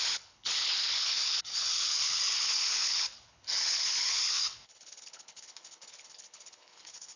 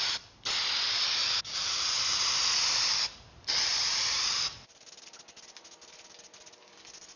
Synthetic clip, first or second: first